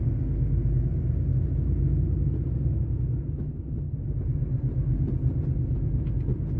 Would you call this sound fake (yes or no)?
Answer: no